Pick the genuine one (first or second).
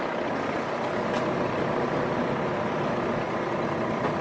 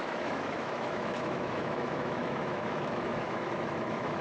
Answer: first